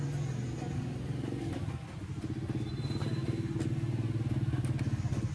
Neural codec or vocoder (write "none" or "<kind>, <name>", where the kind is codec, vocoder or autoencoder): none